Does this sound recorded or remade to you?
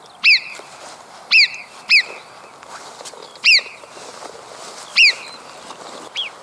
recorded